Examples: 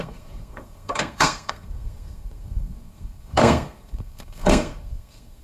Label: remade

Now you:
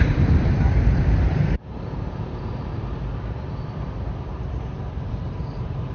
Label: remade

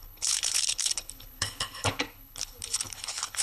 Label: remade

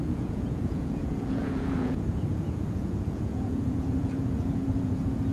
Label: remade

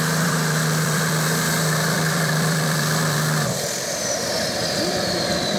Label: remade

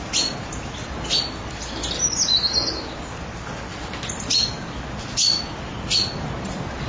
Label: recorded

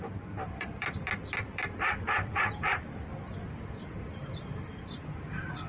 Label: remade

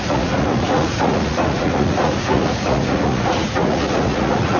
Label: remade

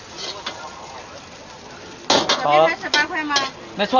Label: recorded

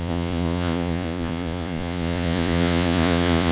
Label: remade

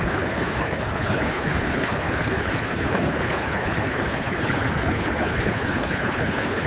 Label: remade